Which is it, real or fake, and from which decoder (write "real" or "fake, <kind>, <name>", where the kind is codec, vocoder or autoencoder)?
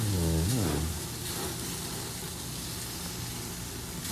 real